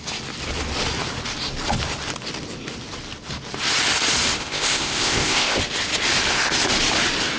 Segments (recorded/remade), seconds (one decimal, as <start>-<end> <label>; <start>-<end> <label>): 0.0-4.4 recorded; 4.4-5.6 remade; 5.6-7.4 recorded